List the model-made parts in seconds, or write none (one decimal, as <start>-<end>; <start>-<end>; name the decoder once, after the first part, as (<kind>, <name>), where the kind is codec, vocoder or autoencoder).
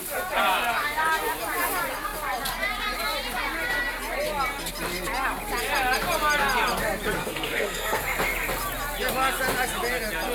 7.2-8.0 (codec, SNAC)